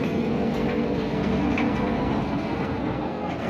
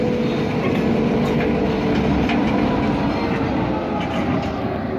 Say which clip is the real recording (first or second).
second